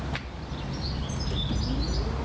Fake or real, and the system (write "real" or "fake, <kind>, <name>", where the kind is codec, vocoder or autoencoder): real